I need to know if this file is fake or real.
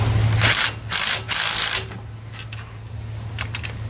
real